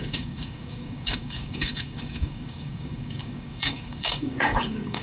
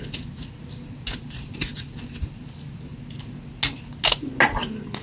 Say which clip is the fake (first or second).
first